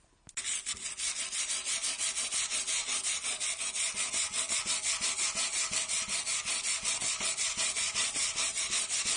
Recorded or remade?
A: recorded